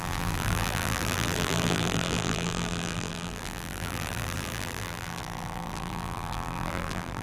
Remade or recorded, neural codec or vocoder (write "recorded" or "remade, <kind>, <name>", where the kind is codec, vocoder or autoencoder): remade, vocoder, BigVGAN v2